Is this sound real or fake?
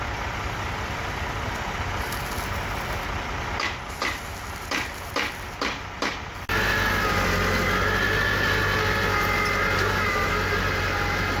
real